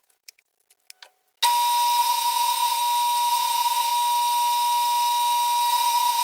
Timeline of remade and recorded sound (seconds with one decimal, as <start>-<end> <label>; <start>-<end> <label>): 0.0-0.5 remade; 0.5-2.0 recorded; 2.0-2.8 remade; 2.8-3.3 recorded; 3.3-3.9 remade; 3.9-5.7 recorded; 5.7-6.2 remade